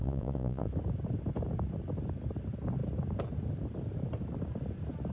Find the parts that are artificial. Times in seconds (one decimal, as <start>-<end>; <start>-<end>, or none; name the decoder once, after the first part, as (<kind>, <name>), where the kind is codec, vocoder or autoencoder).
0.0-0.7 (vocoder, Vocos)